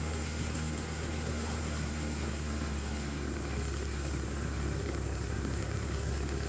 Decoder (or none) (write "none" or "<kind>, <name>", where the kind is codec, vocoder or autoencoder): codec, SNAC